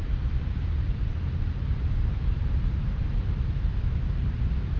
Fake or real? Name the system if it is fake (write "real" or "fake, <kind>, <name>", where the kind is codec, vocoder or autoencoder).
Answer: fake, vocoder, BigVGAN v2